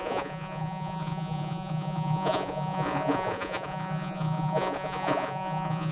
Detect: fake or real fake